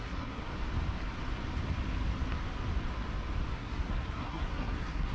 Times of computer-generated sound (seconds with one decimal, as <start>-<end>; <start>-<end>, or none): 0.0-0.4; 3.5-5.1